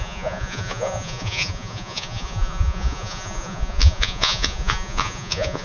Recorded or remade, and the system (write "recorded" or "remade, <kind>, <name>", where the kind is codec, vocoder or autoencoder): remade, vocoder, Vocos